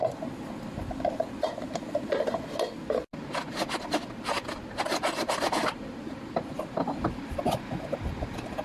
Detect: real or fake real